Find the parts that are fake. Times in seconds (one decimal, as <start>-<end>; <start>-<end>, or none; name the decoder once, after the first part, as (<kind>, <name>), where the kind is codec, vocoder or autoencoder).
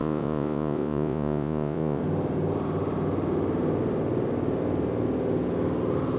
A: 0.0-2.0 (vocoder, Vocos)